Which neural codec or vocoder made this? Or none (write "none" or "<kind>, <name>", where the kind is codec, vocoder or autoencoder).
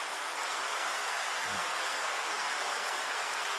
codec, SNAC